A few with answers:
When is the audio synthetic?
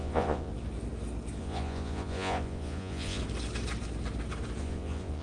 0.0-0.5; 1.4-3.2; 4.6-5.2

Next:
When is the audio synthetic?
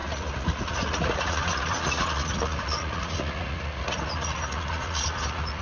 0.0-5.6